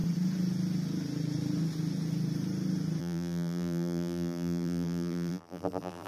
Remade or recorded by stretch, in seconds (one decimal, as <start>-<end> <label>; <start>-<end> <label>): 0.0-3.0 recorded; 3.0-6.1 remade